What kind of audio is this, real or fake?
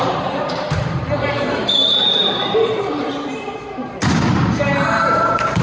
fake